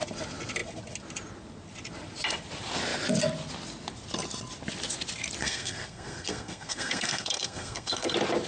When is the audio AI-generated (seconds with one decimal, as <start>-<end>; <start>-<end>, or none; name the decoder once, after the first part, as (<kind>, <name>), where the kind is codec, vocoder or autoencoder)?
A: 5.4-8.1 (codec, SNAC)